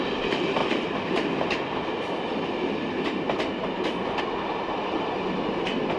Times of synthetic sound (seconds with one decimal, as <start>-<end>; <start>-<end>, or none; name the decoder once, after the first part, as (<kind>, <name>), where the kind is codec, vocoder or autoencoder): none

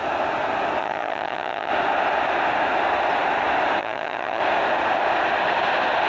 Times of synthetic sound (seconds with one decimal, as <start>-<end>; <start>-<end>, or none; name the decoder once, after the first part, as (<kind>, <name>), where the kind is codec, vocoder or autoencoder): 0.8-1.7 (vocoder, HiFi-GAN); 3.8-4.4

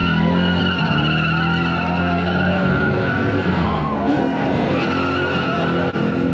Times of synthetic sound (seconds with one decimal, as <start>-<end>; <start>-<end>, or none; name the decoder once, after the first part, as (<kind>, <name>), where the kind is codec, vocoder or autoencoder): 0.0-0.6 (codec, SNAC); 2.0-4.9

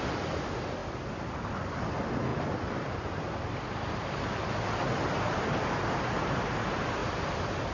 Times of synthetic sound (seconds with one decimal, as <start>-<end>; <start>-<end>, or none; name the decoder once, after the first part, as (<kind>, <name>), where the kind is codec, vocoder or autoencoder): 0.8-1.5 (vocoder, BigVGAN v2); 2.3-4.3

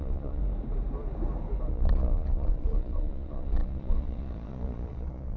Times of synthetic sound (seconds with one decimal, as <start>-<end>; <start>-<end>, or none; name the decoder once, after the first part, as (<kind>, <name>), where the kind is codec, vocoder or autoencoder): 0.0-0.4 (vocoder, Vocos); 1.7-5.4

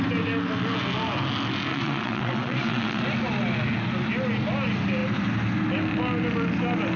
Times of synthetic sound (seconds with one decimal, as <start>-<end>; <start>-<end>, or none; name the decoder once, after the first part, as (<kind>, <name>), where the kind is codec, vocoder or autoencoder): 1.7-3.0 (vocoder, WaveNeXt)

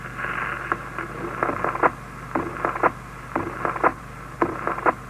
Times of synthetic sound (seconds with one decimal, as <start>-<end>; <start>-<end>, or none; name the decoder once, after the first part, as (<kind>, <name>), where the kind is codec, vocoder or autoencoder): 3.9-5.1 (vocoder, BigVGAN v2)

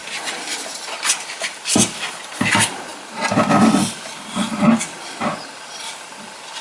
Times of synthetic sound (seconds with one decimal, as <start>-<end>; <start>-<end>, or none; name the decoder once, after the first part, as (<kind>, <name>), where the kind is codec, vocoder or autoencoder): 2.5-6.6 (vocoder, BigVGAN v2)